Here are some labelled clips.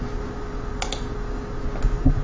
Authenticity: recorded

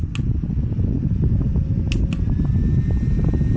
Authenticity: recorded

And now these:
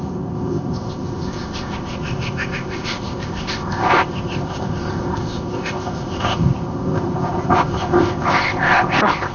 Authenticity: remade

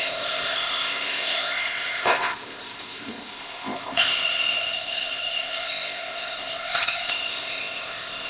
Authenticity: remade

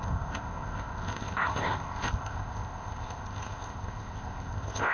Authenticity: remade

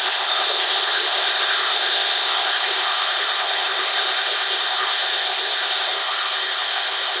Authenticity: remade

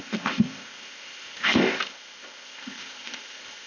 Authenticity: remade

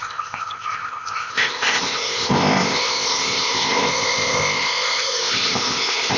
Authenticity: remade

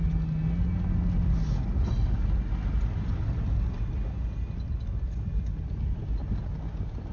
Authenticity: recorded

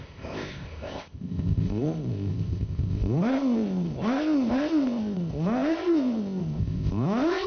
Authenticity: remade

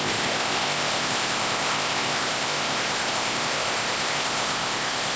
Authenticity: remade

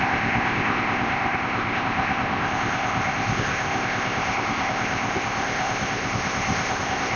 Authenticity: remade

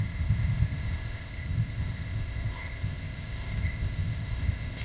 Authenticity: remade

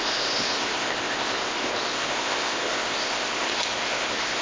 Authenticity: remade